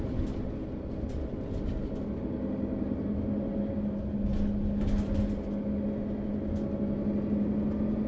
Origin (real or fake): real